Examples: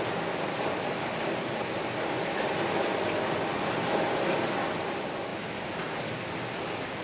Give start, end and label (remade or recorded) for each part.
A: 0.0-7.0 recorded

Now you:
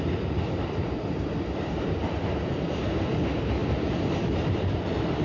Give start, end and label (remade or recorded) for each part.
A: 0.0-2.0 remade; 2.0-3.1 recorded; 3.1-3.6 remade; 3.6-4.5 recorded; 4.5-5.2 remade

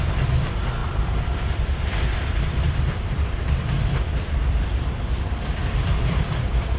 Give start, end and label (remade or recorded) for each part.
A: 0.0-0.8 recorded; 0.8-4.9 remade; 4.9-5.6 recorded; 5.6-6.2 remade; 6.2-6.8 recorded

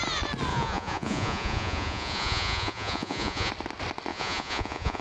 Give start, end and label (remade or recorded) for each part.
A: 0.0-0.5 recorded; 0.5-3.5 remade; 3.5-4.1 recorded; 4.1-5.0 remade

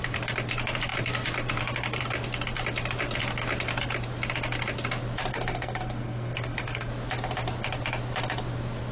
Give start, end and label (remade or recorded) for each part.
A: 0.0-5.3 recorded; 5.3-6.9 remade; 6.9-8.9 recorded

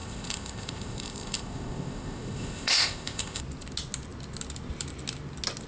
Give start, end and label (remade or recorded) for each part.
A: 0.0-3.4 remade; 3.4-5.7 recorded

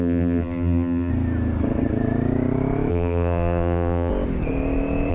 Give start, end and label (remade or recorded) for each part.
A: 0.0-1.1 remade; 1.1-2.9 recorded; 2.9-4.1 remade; 4.1-5.1 recorded